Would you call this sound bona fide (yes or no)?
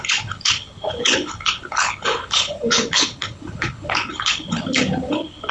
no